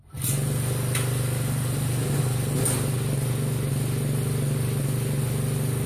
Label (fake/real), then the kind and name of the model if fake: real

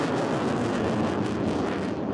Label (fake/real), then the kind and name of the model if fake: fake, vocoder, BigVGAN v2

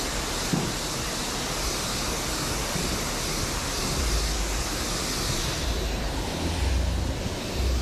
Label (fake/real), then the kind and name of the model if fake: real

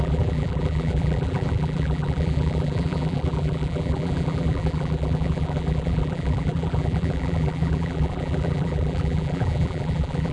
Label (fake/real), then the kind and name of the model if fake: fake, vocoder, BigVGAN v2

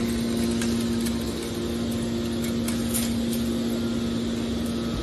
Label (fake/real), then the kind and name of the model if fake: real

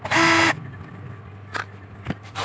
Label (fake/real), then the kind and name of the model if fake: real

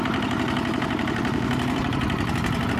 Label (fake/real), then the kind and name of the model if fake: fake, vocoder, BigVGAN v2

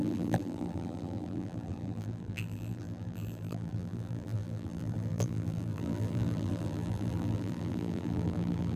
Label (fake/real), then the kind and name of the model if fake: fake, vocoder, BigVGAN v2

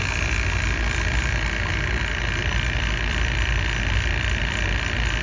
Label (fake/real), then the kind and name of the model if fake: real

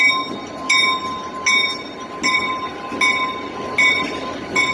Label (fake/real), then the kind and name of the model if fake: real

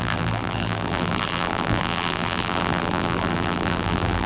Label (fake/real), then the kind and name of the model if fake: fake, vocoder, BigVGAN v2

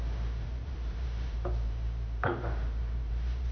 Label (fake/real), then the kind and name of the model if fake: fake, vocoder, BigVGAN v2